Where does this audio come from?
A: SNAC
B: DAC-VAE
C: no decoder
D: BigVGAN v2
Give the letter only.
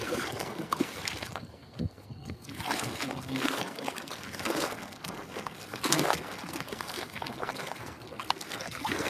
A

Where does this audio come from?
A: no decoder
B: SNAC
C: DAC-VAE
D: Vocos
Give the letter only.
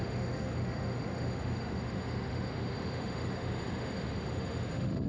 C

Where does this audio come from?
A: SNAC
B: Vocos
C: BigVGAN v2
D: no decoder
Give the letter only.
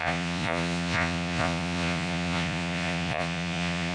B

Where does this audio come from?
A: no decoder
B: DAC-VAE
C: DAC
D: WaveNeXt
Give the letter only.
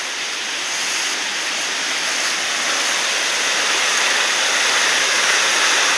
A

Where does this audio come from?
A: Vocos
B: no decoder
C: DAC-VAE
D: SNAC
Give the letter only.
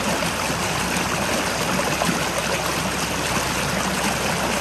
B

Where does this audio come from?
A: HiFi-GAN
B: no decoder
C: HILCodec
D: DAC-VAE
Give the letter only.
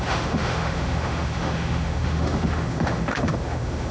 D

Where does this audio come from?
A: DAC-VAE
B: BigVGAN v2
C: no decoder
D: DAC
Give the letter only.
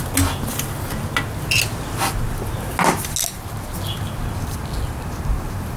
C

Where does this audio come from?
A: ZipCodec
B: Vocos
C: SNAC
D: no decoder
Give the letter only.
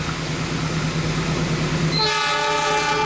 D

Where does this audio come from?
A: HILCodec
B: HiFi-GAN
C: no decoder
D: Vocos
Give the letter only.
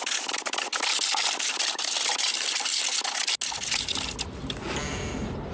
C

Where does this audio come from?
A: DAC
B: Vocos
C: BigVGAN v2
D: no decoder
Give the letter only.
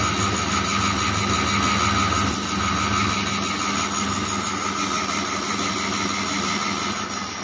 D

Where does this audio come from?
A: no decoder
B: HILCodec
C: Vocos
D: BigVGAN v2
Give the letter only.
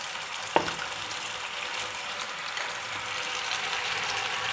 D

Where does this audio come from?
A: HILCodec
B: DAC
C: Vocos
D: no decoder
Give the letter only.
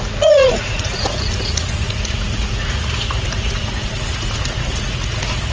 C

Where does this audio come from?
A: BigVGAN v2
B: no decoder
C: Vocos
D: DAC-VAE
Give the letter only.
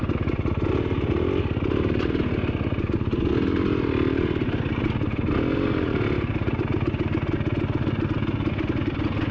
B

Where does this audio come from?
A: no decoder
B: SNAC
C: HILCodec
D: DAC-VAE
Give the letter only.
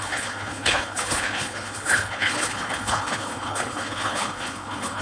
C